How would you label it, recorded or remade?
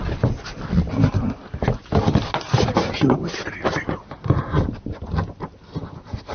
recorded